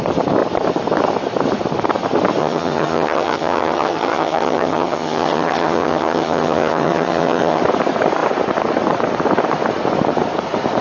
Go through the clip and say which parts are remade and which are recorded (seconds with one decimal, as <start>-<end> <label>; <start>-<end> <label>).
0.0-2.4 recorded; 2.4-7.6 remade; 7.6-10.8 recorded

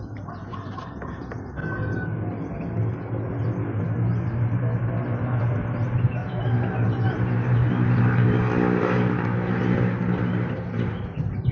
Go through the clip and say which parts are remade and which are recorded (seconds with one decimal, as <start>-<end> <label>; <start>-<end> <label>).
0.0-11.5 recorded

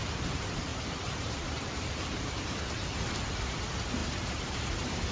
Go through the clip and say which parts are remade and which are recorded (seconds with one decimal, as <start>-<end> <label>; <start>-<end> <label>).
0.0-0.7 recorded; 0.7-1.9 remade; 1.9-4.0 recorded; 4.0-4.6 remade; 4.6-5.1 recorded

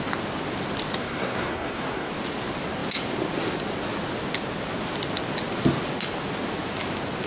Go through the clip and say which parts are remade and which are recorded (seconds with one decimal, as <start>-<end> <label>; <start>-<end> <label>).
0.0-1.0 recorded; 1.0-2.1 remade; 2.1-7.3 recorded